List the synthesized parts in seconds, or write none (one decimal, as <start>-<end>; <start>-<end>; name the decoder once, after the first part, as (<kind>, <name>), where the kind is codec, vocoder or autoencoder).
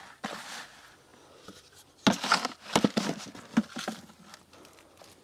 none